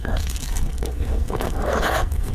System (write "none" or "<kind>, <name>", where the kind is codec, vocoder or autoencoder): codec, SNAC